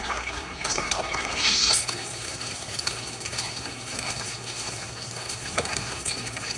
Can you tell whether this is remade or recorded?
remade